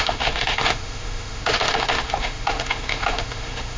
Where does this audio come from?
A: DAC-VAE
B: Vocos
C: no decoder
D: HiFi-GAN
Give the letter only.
A